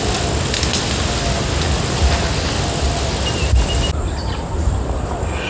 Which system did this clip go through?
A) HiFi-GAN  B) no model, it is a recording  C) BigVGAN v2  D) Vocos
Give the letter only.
B